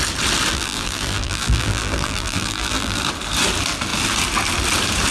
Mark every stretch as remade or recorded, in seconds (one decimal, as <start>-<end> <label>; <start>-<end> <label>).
0.0-0.5 recorded; 0.5-3.0 remade; 3.0-5.1 recorded